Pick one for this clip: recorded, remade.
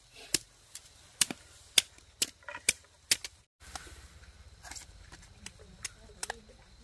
recorded